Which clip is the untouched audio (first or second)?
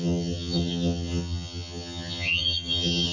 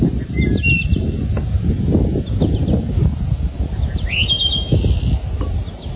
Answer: second